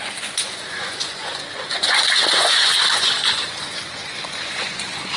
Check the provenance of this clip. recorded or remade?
remade